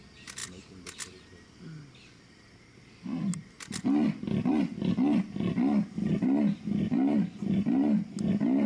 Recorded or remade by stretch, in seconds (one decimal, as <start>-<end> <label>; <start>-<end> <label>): 0.0-8.7 recorded